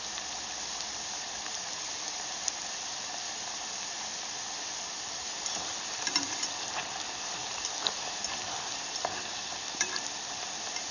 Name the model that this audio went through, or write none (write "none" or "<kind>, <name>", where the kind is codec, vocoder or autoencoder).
vocoder, BigVGAN v2